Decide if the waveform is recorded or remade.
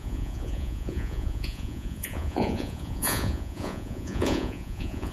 remade